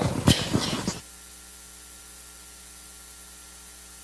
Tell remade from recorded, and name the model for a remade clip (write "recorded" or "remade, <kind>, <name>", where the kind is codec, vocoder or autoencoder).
recorded